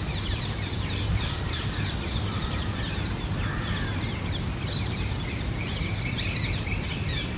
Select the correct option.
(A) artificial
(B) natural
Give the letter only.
B